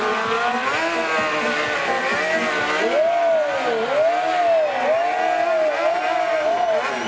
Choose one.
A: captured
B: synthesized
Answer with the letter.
A